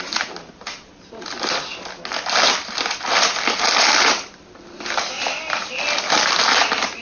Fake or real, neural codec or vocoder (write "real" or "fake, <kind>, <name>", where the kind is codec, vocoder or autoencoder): real